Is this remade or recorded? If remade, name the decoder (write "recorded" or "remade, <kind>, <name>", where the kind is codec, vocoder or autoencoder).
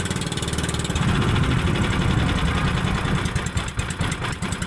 recorded